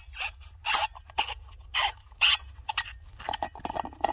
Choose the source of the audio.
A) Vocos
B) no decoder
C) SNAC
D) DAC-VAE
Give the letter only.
B